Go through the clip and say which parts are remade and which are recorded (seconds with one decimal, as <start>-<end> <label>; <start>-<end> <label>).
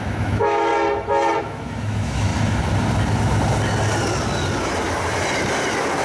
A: 0.0-0.7 remade; 0.7-1.4 recorded; 1.4-2.3 remade; 2.3-6.0 recorded